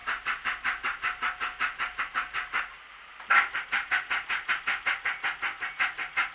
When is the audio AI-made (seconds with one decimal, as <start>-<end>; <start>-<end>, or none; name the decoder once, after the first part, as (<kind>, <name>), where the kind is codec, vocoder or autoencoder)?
none